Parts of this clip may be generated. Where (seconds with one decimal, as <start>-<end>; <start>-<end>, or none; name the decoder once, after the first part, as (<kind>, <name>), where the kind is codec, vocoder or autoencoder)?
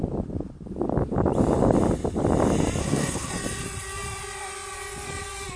2.8-3.3 (codec, SNAC)